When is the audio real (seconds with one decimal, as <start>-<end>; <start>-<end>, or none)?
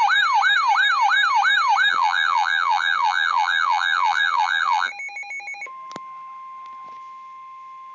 0.0-1.9; 4.9-7.9